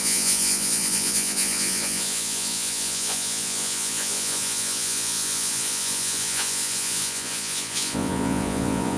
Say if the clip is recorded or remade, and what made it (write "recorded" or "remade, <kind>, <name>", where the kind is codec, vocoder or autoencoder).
remade, vocoder, Vocos